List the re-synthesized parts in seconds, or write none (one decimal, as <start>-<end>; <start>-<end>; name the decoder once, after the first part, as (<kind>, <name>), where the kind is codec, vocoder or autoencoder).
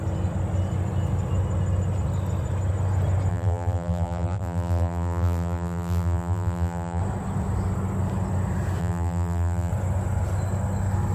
3.3-7.0 (vocoder, BigVGAN v2); 8.8-9.7